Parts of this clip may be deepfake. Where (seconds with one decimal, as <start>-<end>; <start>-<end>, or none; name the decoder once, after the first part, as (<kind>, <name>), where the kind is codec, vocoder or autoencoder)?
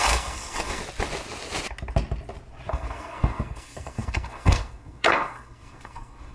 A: 0.0-0.8 (codec, SNAC); 2.7-6.3